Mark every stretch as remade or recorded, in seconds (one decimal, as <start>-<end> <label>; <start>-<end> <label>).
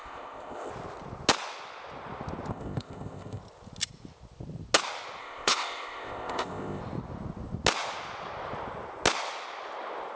0.0-0.7 remade; 0.7-2.5 recorded; 2.5-3.4 remade; 3.4-5.2 recorded; 5.2-6.8 remade; 6.8-10.2 recorded